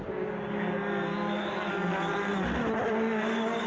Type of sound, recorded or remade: recorded